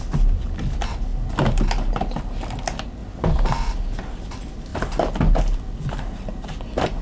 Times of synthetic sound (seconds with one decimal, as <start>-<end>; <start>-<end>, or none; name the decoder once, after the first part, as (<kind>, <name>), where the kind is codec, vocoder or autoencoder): 3.0-3.7 (vocoder, BigVGAN v2)